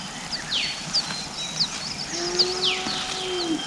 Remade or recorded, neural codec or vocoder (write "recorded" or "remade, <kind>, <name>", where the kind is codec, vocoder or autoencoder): recorded